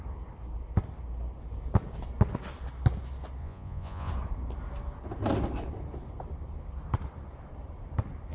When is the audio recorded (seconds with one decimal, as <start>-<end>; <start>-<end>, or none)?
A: 0.0-3.4; 4.1-8.3